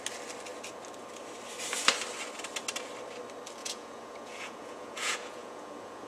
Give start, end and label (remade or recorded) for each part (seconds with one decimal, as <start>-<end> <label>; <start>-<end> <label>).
0.0-3.6 recorded; 3.6-6.1 remade

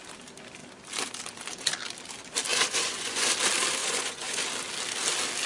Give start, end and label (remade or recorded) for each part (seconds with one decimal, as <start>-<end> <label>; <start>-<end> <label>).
0.0-2.5 recorded; 2.5-3.3 remade; 3.3-3.8 recorded; 3.8-4.4 remade; 4.4-5.5 recorded

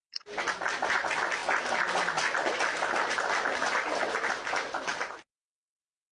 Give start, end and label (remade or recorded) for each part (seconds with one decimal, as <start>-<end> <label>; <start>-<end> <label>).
0.0-6.1 recorded